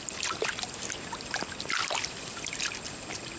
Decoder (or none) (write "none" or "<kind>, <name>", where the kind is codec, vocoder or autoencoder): none